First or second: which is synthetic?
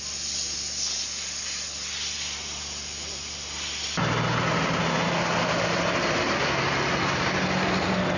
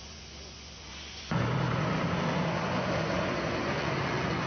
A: second